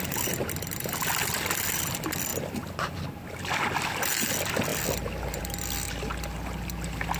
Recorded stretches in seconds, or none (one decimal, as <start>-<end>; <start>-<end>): 0.0-7.2